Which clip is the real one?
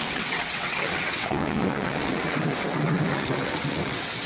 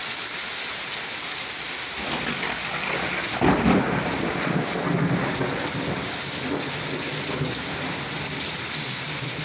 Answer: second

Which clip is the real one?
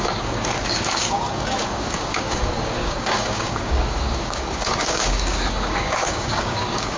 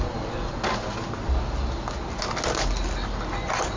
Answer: second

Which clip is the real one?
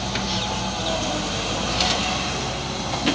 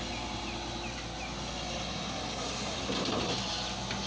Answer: second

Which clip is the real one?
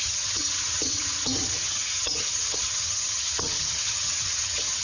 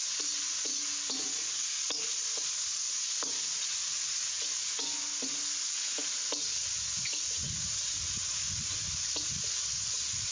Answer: second